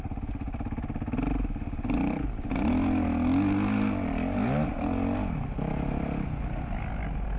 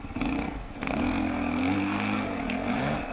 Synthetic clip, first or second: second